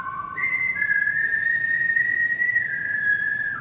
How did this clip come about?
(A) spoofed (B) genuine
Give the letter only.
A